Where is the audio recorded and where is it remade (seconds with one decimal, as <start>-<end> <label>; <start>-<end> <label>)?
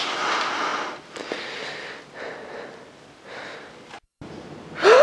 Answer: 0.0-5.0 recorded